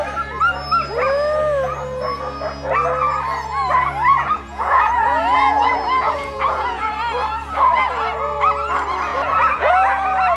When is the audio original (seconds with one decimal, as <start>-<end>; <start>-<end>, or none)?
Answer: 0.0-4.1; 6.9-9.1; 9.7-10.4